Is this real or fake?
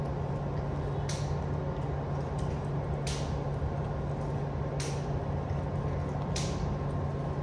real